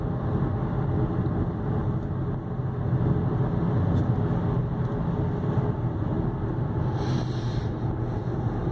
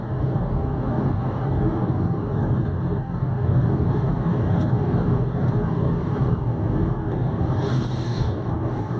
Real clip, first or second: first